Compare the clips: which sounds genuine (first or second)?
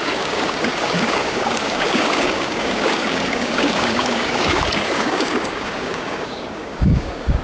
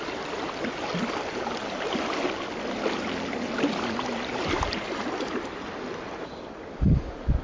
second